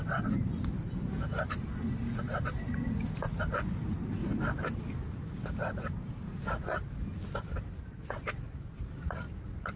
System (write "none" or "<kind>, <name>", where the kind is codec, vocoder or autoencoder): none